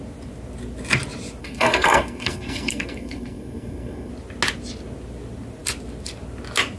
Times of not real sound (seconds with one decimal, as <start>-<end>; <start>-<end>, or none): 1.4-4.1